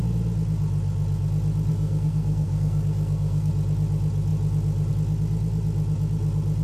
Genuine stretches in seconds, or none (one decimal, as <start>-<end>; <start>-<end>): 0.0-1.7; 3.5-6.6